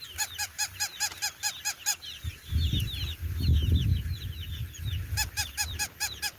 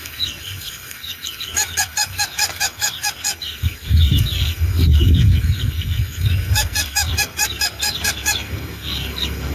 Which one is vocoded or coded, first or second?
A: second